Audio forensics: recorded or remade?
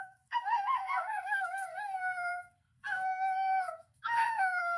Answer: remade